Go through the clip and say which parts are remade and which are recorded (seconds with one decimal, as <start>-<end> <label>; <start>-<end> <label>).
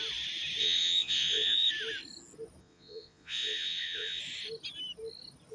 0.0-0.6 recorded; 0.6-1.7 remade; 1.7-2.6 recorded; 2.6-4.2 remade; 4.2-5.5 recorded